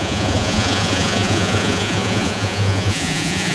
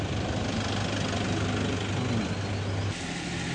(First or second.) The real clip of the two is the second